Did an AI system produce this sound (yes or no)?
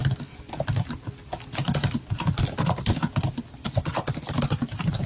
no